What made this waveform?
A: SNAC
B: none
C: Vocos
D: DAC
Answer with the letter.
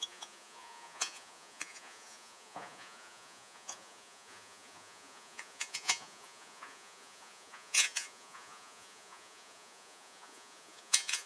C